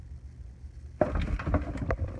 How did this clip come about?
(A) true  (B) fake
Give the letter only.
A